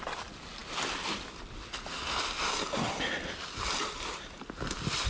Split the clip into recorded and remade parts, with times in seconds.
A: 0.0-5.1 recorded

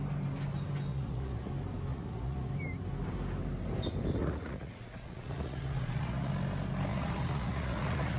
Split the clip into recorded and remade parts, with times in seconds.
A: 0.0-0.9 recorded; 0.9-1.5 remade; 1.5-1.9 recorded; 1.9-2.5 remade; 2.5-4.2 recorded; 4.2-6.3 remade; 6.3-6.9 recorded; 6.9-8.2 remade

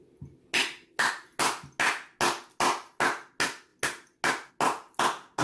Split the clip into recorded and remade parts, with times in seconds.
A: 0.0-5.4 recorded

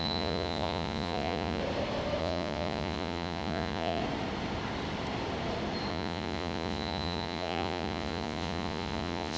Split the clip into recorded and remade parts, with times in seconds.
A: 0.0-1.6 remade; 1.6-2.2 recorded; 2.2-4.0 remade; 4.0-5.9 recorded; 5.9-9.4 remade

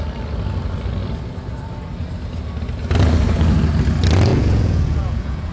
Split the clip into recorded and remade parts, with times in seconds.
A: 0.0-4.3 recorded; 4.3-5.5 remade

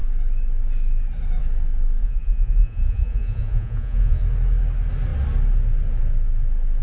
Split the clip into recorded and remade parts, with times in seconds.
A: 0.0-2.0 recorded; 2.0-4.2 remade; 4.2-6.8 recorded